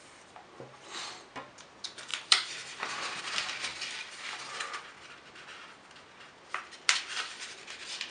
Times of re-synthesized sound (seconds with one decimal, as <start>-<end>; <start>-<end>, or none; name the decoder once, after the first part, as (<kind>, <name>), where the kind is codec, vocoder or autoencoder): 2.1-3.2 (vocoder, BigVGAN v2); 3.7-4.4